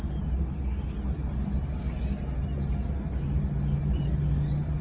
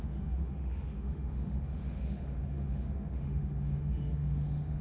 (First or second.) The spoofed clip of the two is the second